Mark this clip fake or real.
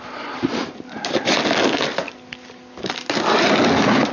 real